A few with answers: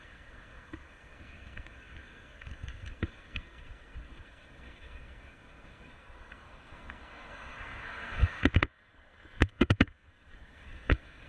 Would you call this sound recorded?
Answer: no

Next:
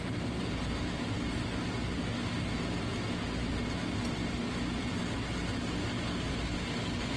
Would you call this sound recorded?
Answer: yes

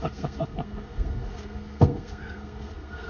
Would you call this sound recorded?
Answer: no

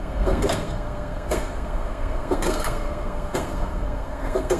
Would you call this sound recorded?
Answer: no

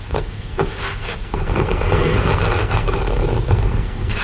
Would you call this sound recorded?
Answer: no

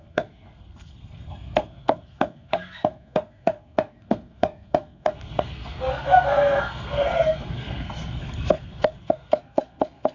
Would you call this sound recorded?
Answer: no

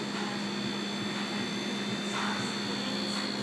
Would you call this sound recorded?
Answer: yes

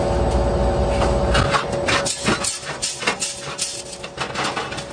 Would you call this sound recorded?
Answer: yes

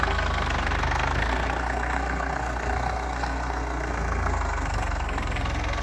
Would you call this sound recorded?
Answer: no